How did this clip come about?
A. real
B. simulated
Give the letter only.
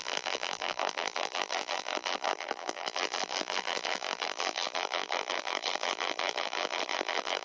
B